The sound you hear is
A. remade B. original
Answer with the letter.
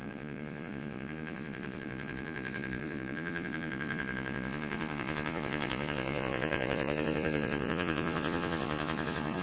A